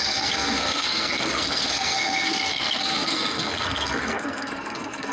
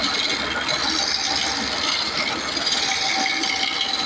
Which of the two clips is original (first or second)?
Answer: second